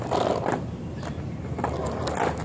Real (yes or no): yes